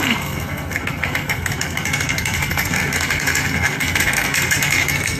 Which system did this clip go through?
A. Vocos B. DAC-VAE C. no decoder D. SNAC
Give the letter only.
D